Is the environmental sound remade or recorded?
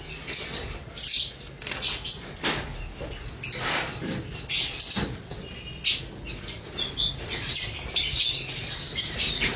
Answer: recorded